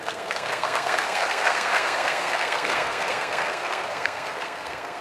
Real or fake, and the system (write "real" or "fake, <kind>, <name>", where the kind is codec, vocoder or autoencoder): fake, codec, SNAC